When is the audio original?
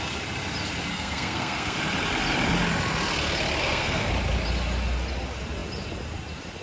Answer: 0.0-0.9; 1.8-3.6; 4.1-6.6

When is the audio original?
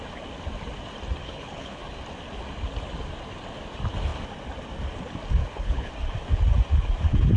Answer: 0.0-1.2; 1.8-5.4; 5.9-7.4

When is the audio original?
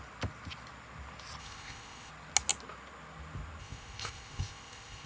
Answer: 0.0-1.4; 2.1-3.6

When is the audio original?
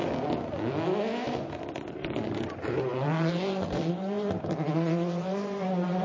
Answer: 0.0-1.9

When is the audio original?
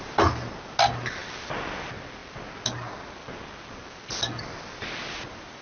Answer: 0.0-5.6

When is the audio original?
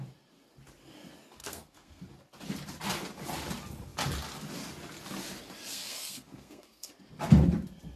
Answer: 0.0-1.4; 2.0-5.7; 6.9-8.0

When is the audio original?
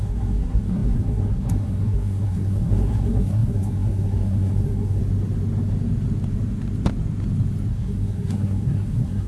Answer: 5.0-7.7